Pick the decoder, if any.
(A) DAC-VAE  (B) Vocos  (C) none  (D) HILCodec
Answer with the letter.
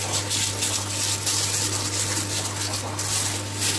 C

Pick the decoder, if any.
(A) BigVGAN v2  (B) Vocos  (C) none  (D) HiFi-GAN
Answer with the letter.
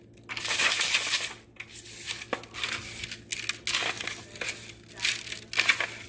C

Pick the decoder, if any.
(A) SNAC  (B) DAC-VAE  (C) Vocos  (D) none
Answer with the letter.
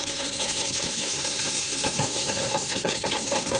A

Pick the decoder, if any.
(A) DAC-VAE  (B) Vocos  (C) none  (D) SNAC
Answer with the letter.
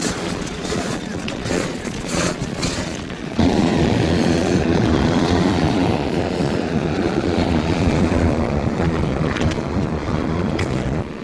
B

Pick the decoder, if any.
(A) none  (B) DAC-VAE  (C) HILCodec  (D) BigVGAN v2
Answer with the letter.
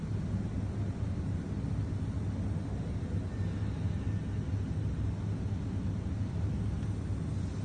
A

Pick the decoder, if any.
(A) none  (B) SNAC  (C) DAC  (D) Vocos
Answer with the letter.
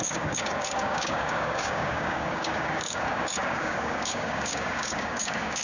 C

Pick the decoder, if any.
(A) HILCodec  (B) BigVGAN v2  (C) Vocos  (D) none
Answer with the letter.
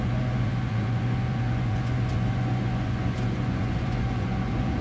C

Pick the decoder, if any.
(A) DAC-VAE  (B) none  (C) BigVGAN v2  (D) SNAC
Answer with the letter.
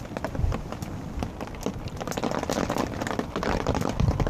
B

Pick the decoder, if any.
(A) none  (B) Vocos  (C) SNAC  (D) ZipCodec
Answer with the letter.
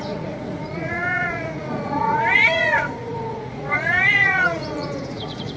B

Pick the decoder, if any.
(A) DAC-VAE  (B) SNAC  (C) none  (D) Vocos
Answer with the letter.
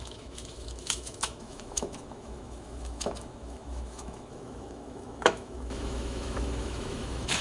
A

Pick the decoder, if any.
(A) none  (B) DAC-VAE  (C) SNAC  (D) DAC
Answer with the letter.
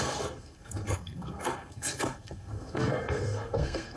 C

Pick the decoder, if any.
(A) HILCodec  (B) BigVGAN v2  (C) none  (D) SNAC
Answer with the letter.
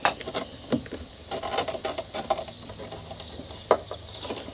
C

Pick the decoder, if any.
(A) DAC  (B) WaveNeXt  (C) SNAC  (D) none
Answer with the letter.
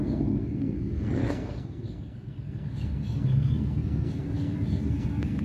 C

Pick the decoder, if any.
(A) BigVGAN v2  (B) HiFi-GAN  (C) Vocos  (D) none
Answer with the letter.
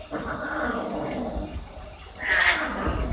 D